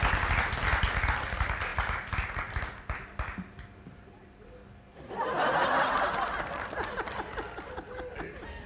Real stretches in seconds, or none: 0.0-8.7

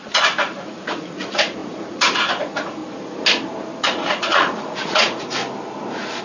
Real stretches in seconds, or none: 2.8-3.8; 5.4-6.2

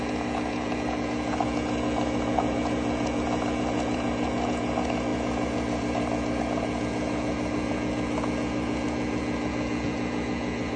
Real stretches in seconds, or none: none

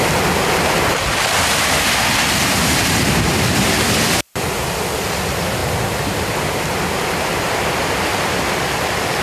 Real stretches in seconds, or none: 0.0-9.2

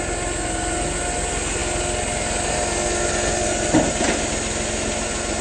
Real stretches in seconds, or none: 0.0-5.4